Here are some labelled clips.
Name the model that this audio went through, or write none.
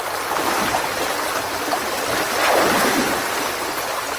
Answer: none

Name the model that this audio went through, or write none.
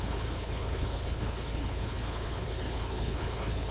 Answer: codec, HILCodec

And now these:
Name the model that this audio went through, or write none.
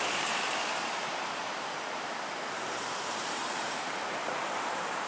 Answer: vocoder, BigVGAN v2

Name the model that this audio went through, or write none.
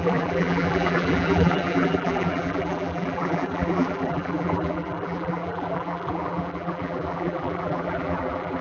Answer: vocoder, BigVGAN v2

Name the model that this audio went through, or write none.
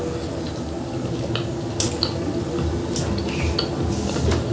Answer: none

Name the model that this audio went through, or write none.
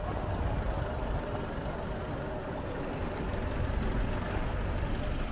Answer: none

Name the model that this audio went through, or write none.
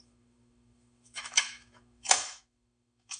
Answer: autoencoder, DAC-VAE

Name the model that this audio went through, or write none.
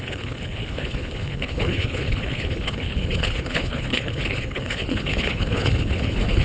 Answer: codec, HILCodec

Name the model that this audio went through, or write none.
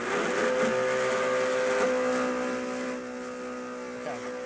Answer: none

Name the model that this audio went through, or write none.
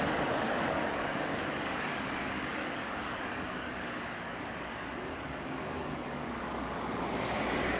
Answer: codec, DAC